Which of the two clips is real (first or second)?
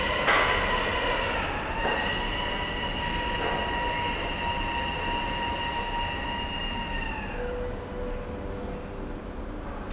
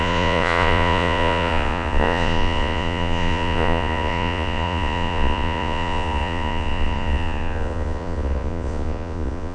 first